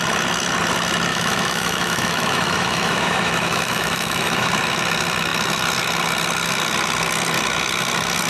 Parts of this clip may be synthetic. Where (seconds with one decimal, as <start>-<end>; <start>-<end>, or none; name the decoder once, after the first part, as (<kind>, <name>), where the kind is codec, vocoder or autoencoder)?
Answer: 1.1-4.5 (autoencoder, DAC-VAE)